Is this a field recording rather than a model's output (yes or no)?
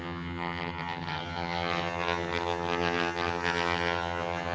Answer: no